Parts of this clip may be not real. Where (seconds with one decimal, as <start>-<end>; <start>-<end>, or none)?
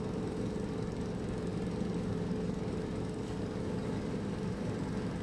0.0-5.2